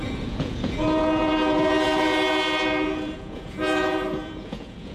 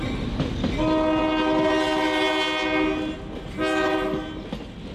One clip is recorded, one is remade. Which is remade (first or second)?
first